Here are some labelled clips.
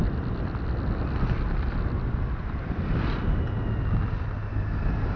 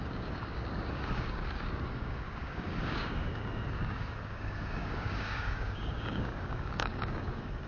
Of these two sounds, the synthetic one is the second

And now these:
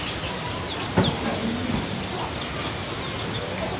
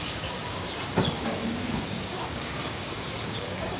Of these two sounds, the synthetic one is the second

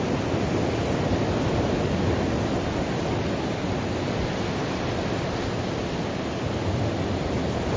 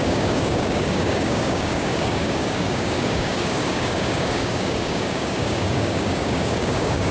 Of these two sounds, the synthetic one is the second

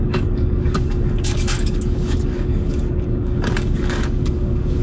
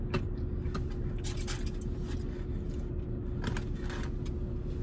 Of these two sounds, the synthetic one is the first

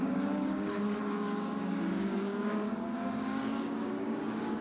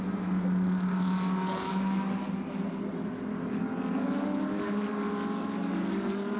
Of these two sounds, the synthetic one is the first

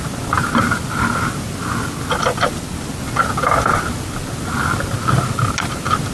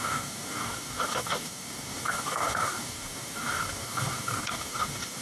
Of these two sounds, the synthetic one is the second